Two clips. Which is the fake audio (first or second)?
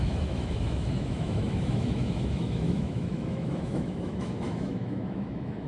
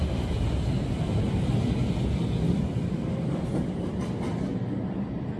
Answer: first